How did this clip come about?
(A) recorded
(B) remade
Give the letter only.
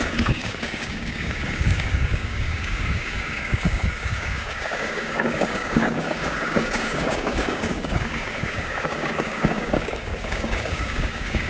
B